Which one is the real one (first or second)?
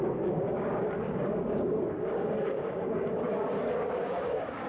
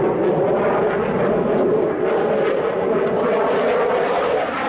second